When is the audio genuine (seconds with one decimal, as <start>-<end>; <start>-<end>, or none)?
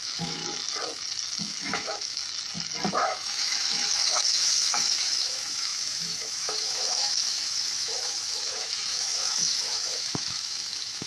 0.4-1.4; 2.2-2.9